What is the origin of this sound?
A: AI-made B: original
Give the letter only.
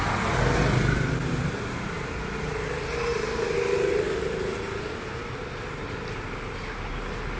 B